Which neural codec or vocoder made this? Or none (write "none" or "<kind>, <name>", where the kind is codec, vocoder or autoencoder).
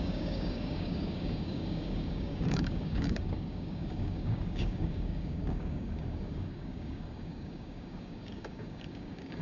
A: codec, DAC